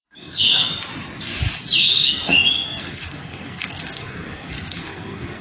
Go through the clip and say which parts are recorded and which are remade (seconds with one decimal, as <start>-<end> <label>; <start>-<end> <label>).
0.0-0.7 remade; 0.7-1.8 recorded; 1.8-5.4 remade

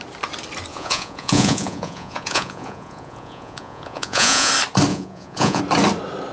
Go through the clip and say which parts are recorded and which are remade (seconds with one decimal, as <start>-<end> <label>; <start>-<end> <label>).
0.0-0.7 recorded; 0.7-4.5 remade; 4.5-4.9 recorded; 4.9-5.6 remade; 5.6-6.3 recorded

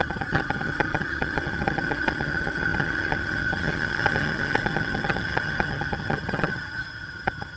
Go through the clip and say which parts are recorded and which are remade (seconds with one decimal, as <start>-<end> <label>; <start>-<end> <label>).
0.0-7.6 remade

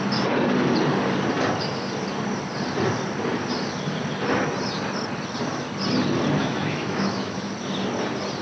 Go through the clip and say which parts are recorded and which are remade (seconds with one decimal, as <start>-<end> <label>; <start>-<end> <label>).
0.0-6.4 recorded; 6.4-7.5 remade; 7.5-8.4 recorded

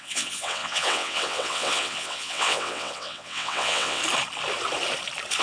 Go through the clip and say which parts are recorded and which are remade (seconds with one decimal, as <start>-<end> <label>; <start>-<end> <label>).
0.0-4.0 remade; 4.0-5.4 recorded

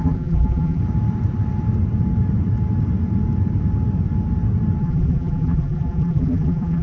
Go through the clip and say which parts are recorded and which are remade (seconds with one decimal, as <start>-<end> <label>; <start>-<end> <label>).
0.0-0.8 remade; 0.8-4.8 recorded; 4.8-6.8 remade

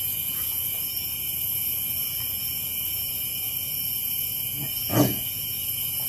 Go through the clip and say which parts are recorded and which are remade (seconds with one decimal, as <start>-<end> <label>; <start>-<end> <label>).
0.0-6.1 remade

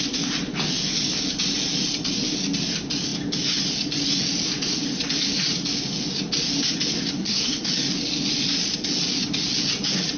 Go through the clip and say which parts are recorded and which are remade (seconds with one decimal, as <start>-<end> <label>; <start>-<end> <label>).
0.0-7.2 recorded; 7.2-7.7 remade; 7.7-10.2 recorded